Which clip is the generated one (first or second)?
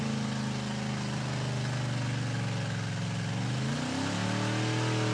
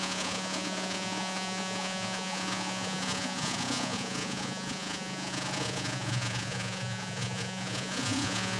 second